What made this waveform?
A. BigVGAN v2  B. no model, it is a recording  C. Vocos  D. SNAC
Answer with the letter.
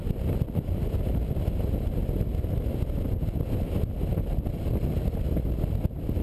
B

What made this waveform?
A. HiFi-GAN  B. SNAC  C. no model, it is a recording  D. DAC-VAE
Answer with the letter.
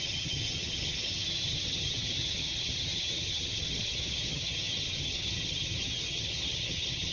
A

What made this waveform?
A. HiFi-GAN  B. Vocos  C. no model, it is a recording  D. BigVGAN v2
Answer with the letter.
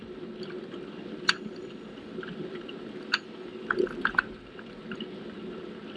C